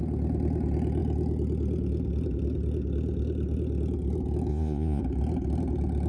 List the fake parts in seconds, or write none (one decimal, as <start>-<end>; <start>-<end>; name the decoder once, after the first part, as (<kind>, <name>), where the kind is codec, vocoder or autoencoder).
4.5-5.0 (vocoder, Vocos)